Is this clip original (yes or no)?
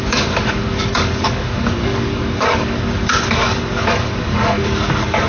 no